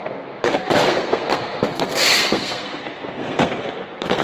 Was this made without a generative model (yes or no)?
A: no